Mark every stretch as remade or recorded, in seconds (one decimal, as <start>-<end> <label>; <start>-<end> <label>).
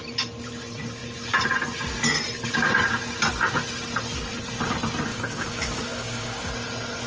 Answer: 0.0-5.1 recorded; 5.1-6.5 remade; 6.5-7.1 recorded